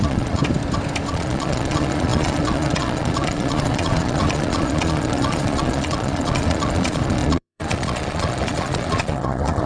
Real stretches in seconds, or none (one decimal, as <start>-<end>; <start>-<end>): 0.4-1.1